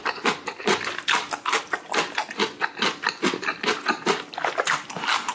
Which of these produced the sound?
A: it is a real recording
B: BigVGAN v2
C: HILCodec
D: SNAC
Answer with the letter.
A